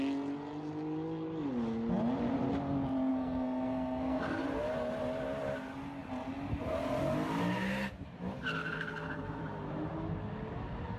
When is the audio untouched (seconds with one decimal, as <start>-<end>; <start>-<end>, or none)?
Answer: 0.0-3.1; 4.4-8.6; 9.4-11.0